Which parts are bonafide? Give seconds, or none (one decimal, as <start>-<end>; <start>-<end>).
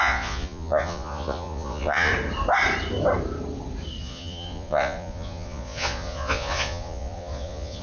2.1-4.0